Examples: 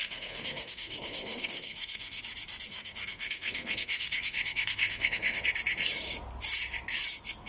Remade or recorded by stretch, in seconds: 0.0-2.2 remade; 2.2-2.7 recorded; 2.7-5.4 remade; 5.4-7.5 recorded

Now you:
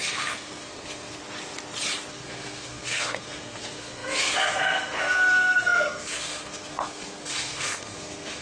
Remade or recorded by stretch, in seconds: 0.0-1.2 remade; 1.2-2.1 recorded; 2.1-8.4 remade